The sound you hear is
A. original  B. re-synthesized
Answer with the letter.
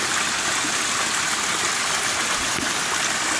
A